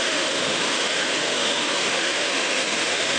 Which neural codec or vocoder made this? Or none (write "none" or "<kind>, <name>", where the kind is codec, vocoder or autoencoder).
autoencoder, DAC-VAE